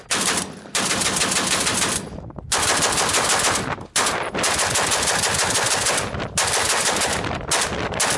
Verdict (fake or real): real